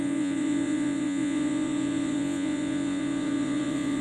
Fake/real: fake